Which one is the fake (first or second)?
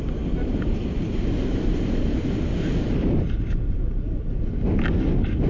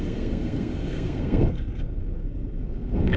second